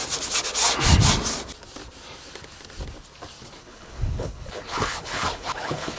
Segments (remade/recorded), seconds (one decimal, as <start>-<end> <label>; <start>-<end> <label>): 0.0-3.6 recorded; 3.6-6.0 remade